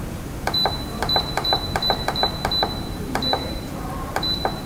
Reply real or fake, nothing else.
fake